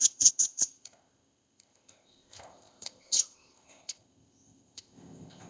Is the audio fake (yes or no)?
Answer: yes